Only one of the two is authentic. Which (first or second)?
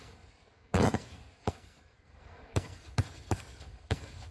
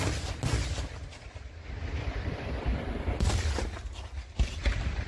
second